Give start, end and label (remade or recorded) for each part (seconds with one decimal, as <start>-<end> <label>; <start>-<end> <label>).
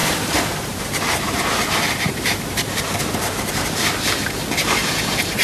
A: 0.0-2.8 remade; 2.8-4.6 recorded; 4.6-5.4 remade